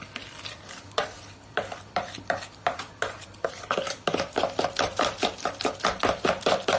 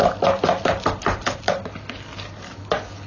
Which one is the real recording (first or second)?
second